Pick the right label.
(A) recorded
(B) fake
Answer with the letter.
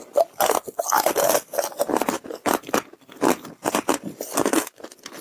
A